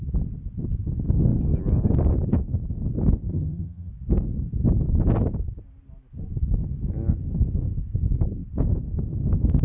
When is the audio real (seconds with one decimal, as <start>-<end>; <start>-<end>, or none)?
0.0-3.3; 3.9-9.6